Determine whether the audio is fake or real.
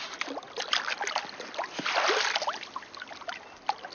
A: real